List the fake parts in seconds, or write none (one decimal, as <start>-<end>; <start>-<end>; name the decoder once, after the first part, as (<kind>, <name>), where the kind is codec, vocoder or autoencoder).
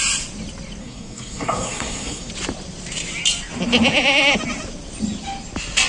0.8-2.3 (codec, SNAC)